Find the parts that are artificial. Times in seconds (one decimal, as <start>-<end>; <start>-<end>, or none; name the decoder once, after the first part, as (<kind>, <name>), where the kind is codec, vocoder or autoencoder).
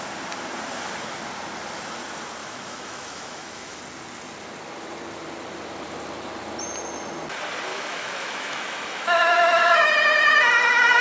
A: 2.4-3.8 (autoencoder, DAC-VAE); 7.7-9.9